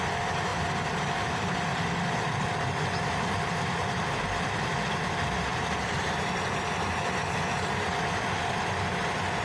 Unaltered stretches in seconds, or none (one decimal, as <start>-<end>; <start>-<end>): 0.0-0.5; 4.8-5.5; 6.7-9.4